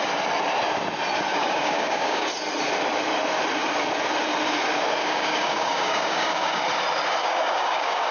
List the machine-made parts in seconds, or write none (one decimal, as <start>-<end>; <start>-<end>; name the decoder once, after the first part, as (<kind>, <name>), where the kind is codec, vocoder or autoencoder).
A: 1.3-2.3 (codec, DAC); 5.0-6.6; 7.2-8.1